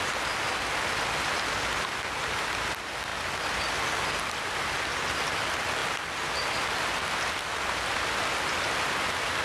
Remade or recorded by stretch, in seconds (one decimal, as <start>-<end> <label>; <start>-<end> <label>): 0.0-9.4 recorded